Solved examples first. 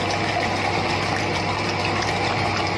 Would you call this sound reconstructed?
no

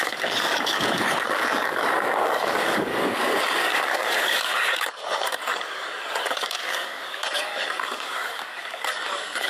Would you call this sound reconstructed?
yes